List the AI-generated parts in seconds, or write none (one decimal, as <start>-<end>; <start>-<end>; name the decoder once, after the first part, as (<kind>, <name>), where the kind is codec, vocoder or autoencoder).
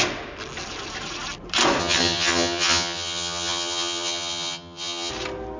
1.8-5.1 (vocoder, HiFi-GAN)